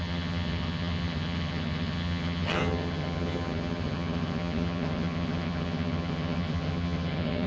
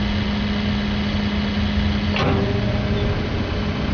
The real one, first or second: second